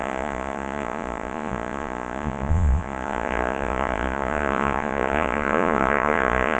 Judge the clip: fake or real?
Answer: fake